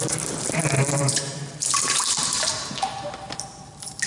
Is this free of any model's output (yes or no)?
no